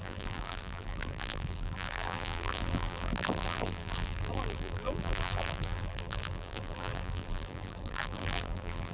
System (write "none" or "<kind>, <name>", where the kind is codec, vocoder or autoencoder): vocoder, BigVGAN v2